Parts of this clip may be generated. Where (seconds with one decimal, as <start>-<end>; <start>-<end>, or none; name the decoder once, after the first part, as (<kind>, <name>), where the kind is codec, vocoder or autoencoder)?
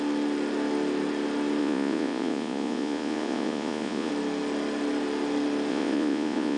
1.6-4.1 (vocoder, Vocos); 5.7-6.6